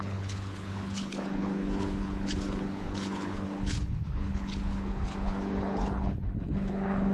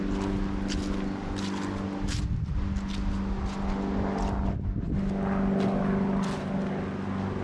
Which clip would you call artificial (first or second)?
first